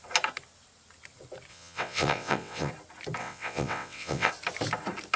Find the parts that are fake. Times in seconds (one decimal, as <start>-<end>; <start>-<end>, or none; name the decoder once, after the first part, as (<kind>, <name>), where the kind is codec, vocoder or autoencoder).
1.5-2.7 (vocoder, WaveNeXt); 3.2-4.3